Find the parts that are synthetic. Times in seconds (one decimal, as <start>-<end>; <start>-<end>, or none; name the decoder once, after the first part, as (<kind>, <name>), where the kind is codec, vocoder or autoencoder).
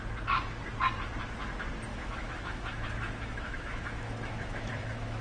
1.9-5.2 (autoencoder, DAC-VAE)